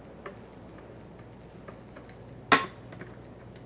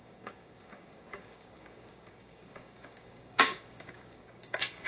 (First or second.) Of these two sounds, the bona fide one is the first